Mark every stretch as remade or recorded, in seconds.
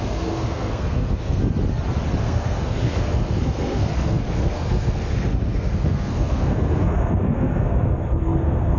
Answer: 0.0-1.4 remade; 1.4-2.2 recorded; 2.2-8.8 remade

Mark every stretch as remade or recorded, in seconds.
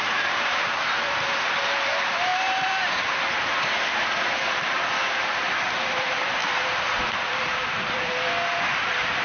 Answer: 0.0-9.2 remade